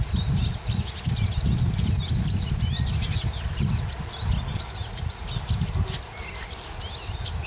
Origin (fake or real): real